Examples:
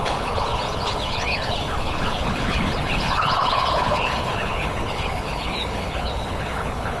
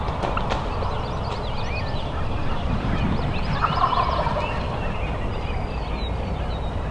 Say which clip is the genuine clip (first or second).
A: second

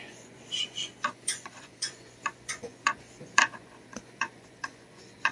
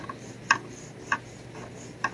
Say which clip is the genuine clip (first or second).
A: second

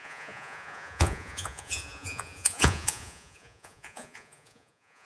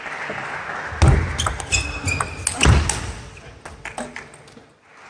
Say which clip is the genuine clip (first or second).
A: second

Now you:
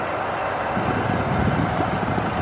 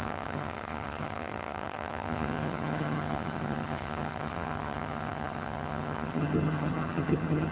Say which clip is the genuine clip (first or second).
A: first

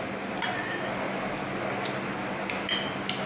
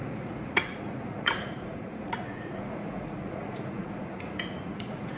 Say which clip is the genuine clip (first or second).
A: first